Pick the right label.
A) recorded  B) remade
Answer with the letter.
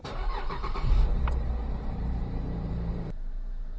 B